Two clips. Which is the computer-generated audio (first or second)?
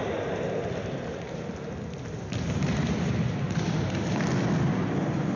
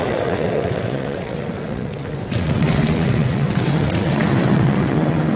second